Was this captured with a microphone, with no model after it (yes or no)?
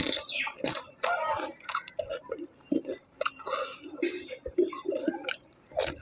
no